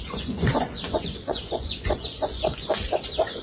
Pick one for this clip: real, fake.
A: fake